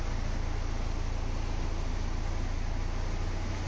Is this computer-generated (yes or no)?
no